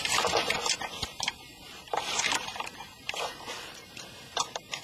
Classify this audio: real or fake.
fake